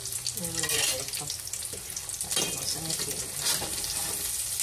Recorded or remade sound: recorded